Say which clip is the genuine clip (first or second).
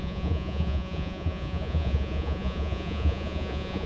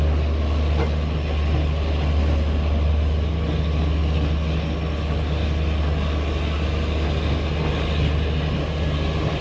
second